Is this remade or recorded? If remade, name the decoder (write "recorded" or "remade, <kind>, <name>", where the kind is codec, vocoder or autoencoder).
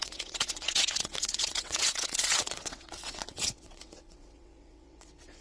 remade, vocoder, WaveNeXt